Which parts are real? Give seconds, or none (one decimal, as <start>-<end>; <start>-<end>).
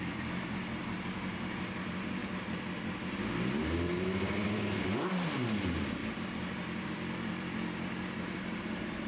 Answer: none